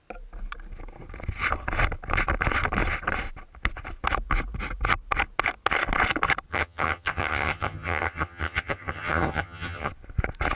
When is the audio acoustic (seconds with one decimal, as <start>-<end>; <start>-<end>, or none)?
0.0-6.5; 9.9-10.6

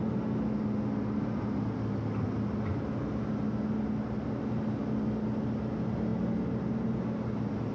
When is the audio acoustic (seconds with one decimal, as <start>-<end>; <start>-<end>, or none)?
0.0-7.7

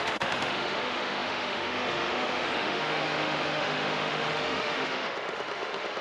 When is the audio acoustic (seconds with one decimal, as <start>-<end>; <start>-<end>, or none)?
none

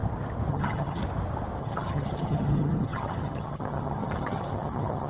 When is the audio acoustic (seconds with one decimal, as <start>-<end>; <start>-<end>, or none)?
0.0-0.5; 1.0-1.6

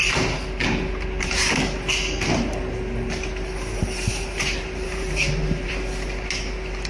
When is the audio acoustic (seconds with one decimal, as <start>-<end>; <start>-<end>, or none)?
0.0-3.8; 5.7-6.9

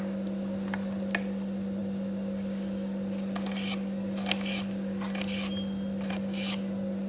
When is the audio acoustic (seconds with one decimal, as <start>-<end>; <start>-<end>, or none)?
0.0-7.1

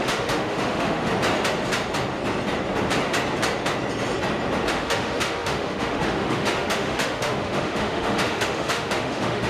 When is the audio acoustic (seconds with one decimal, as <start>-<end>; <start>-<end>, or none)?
1.1-4.7

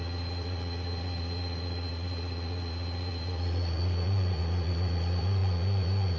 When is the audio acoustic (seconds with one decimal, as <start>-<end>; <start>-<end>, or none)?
none